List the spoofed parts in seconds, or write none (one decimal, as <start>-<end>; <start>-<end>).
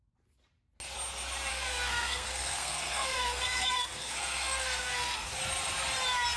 1.5-5.3